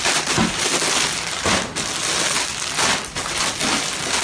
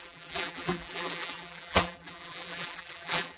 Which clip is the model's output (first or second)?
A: second